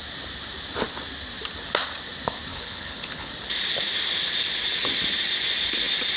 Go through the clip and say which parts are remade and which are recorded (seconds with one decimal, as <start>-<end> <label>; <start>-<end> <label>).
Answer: 0.0-2.5 recorded; 2.5-3.3 remade; 3.3-6.2 recorded